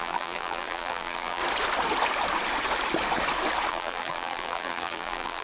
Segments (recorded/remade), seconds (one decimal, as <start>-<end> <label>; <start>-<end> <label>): 0.0-1.4 remade; 1.4-3.7 recorded; 3.7-5.4 remade